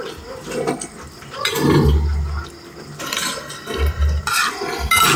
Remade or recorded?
recorded